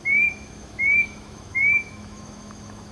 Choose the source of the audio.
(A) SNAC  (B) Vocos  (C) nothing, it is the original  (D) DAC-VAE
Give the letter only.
D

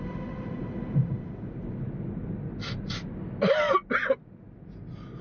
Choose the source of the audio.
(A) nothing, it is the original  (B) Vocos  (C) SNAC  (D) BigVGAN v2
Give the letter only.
A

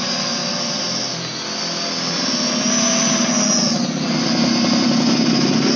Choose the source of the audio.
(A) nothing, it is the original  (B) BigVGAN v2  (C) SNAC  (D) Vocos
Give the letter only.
A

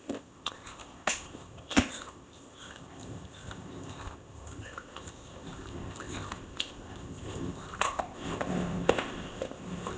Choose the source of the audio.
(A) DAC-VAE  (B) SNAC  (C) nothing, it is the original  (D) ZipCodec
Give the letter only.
D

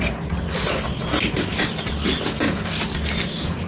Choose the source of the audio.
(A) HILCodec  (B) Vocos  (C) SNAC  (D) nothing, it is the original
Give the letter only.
D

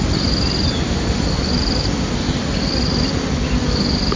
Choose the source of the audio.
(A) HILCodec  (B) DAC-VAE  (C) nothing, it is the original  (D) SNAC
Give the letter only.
C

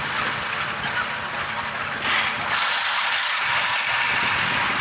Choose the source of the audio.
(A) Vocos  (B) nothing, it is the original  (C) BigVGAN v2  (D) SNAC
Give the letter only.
B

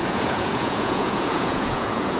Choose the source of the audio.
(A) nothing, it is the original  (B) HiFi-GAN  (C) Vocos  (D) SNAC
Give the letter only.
C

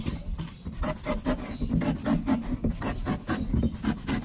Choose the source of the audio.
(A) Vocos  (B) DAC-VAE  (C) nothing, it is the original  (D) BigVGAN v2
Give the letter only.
C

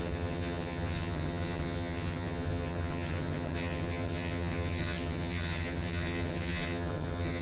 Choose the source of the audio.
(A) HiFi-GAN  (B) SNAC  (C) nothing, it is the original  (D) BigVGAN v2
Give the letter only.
A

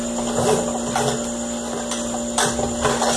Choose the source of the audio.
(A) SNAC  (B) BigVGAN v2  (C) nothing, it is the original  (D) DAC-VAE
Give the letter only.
C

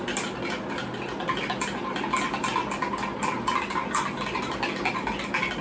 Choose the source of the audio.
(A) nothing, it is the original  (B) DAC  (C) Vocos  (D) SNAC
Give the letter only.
A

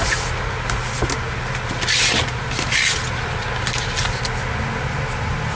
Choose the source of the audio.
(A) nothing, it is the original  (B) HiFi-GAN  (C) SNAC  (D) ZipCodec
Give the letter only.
A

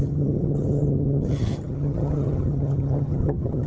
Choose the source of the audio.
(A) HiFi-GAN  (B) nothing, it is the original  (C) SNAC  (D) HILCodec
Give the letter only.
A